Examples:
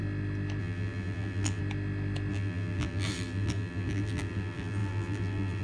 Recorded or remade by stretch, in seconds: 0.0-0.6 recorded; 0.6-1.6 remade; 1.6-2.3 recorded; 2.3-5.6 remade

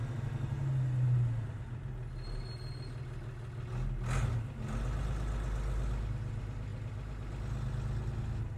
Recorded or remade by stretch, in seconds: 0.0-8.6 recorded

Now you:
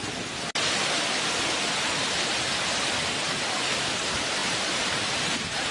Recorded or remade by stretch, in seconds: 0.0-4.4 recorded; 4.4-5.1 remade; 5.1-5.7 recorded

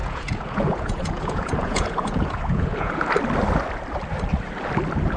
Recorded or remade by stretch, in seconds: 0.0-3.1 remade; 3.1-5.2 recorded